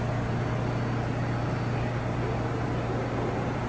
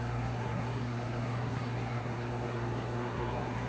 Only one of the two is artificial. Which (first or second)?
second